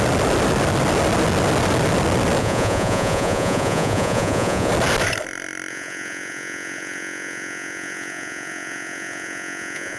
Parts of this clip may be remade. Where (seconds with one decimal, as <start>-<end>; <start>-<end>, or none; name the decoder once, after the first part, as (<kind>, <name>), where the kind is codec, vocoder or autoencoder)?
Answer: 2.4-4.7 (vocoder, Vocos); 5.7-10.0